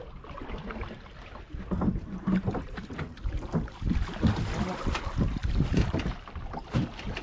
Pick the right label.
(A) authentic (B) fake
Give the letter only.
A